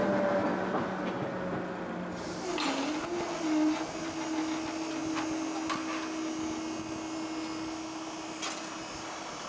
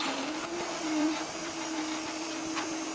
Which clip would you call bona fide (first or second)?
first